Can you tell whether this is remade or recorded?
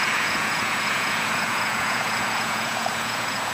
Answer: remade